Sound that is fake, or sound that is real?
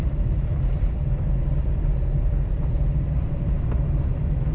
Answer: fake